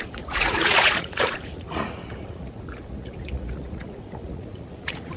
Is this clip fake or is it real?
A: fake